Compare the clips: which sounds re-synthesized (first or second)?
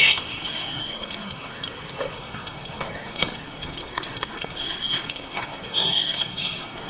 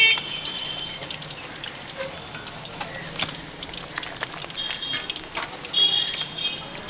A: first